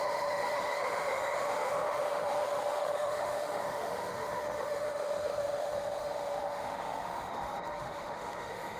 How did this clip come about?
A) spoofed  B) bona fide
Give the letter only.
A